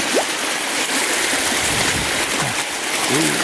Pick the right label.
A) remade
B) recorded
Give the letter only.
B